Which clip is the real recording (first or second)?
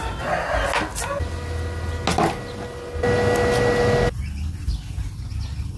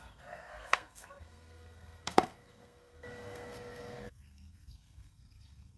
first